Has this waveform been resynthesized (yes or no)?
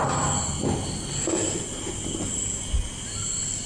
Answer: no